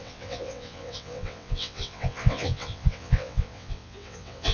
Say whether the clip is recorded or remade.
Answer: remade